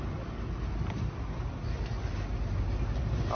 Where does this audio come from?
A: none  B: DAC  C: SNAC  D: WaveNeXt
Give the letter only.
A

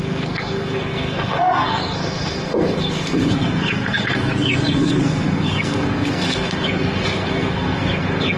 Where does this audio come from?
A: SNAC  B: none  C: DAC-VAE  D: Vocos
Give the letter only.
A